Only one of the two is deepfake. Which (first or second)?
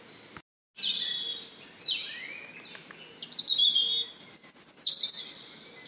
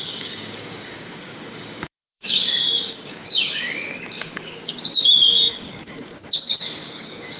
second